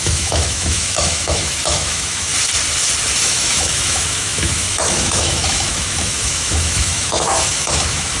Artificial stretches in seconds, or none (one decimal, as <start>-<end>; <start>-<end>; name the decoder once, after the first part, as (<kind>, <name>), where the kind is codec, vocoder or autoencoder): 0.0-2.3 (autoencoder, DAC-VAE); 3.2-8.2